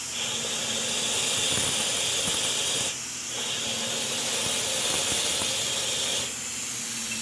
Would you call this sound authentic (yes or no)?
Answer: yes